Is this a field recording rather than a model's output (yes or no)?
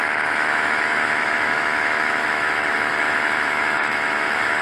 no